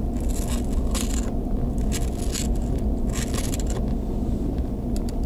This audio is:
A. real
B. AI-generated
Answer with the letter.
A